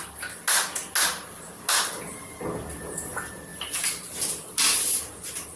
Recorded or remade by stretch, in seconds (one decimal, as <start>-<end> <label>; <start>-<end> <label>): 0.0-5.6 recorded